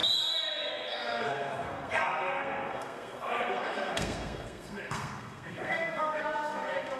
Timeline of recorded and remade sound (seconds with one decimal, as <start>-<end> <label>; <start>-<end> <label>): 0.0-0.7 recorded; 0.7-7.0 remade